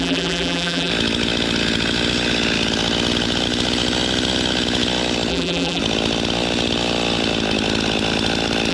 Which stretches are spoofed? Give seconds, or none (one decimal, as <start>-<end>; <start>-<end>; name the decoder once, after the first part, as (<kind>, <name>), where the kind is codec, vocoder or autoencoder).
0.0-0.9 (vocoder, BigVGAN v2); 5.3-5.8